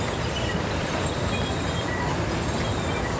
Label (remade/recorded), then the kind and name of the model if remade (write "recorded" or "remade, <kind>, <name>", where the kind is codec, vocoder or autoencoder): remade, vocoder, BigVGAN v2